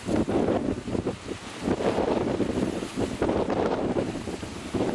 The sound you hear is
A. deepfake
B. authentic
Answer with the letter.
B